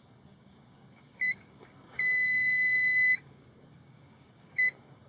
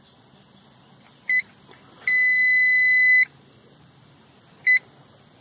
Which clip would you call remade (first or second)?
first